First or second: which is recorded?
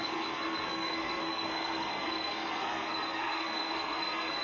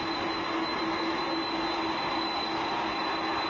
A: second